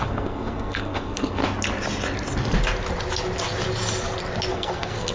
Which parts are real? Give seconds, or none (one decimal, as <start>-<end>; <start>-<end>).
1.4-4.5